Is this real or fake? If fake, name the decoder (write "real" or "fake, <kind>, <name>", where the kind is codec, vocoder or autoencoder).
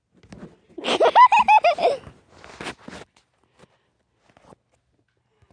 real